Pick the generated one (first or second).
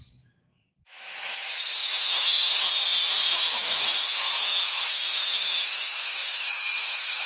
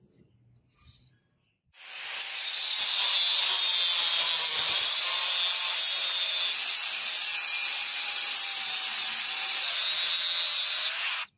first